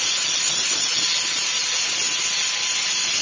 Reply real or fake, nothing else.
real